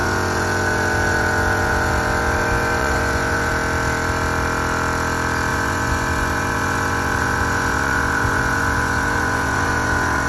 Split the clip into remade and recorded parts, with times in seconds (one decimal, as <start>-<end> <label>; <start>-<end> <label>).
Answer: 0.0-3.5 remade; 3.5-5.5 recorded; 5.5-10.3 remade